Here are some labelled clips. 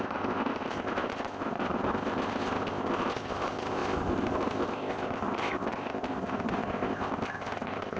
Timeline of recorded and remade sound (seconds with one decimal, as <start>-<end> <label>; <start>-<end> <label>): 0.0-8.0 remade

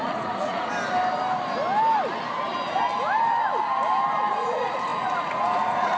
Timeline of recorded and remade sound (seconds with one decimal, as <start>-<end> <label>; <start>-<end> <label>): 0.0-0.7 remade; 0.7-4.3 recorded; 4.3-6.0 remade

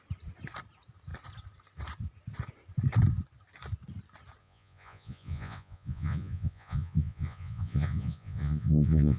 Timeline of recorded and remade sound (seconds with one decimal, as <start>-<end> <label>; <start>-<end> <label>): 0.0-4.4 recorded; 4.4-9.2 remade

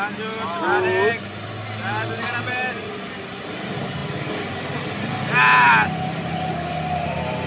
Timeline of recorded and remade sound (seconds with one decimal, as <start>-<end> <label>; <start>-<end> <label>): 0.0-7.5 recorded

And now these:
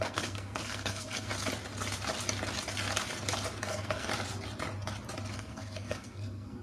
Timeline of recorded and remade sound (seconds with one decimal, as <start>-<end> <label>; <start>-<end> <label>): 0.0-1.3 remade; 1.3-3.6 recorded; 3.6-4.1 remade; 4.1-5.3 recorded; 5.3-6.6 remade

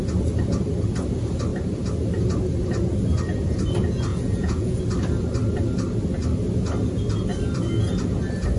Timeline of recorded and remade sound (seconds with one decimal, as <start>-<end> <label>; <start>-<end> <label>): 0.0-4.1 recorded; 4.1-4.8 remade; 4.8-8.6 recorded

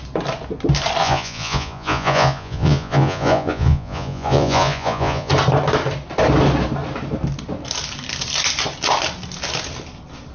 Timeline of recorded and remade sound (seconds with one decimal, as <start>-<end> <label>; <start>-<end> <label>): 0.0-1.0 recorded; 1.0-5.3 remade; 5.3-10.3 recorded

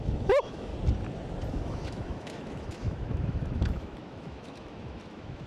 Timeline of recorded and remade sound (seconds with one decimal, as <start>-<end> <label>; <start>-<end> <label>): 0.0-0.7 remade; 0.7-1.5 recorded; 1.5-5.5 remade